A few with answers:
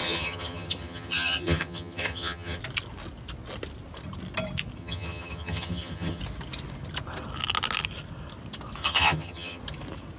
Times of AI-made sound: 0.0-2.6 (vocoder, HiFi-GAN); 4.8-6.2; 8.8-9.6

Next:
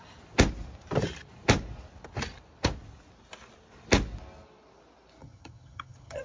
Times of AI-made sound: 5.2-6.2 (vocoder, HiFi-GAN)

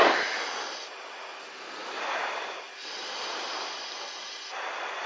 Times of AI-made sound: none

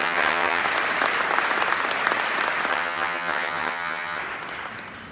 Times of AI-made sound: 0.0-0.6 (vocoder, HiFi-GAN); 2.7-4.2

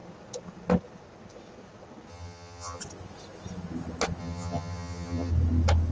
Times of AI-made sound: 2.1-2.8 (vocoder, HiFi-GAN); 4.2-5.3